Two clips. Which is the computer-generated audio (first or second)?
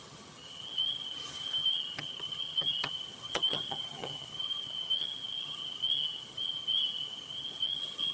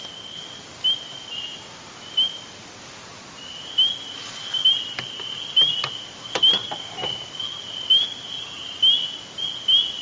first